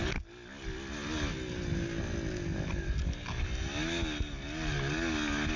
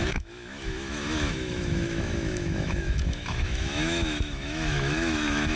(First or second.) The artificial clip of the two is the second